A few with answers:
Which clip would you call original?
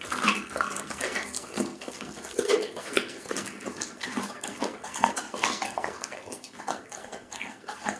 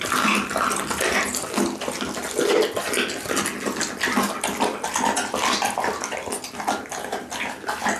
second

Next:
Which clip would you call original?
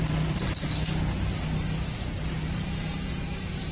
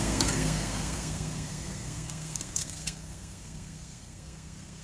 first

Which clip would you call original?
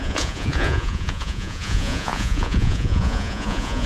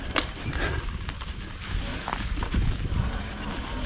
second